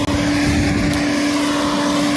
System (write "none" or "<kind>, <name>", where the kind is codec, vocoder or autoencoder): none